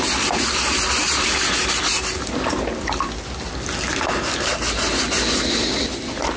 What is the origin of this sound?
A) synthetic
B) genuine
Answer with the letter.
B